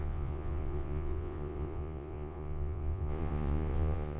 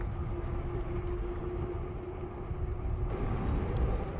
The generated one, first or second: first